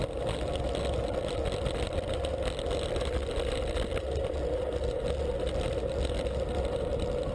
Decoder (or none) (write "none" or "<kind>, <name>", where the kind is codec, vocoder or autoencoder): none